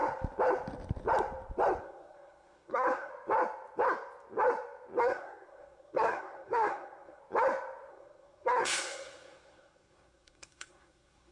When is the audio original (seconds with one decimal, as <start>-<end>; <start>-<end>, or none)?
0.0-1.8; 3.1-5.0; 7.2-7.9